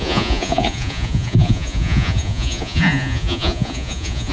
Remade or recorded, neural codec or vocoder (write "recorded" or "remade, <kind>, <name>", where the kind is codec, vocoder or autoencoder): remade, vocoder, Vocos